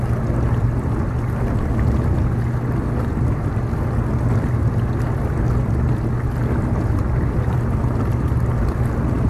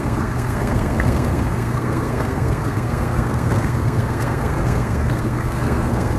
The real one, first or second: first